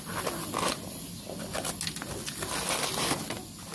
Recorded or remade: recorded